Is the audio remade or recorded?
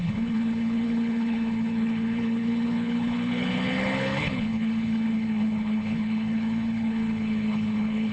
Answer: remade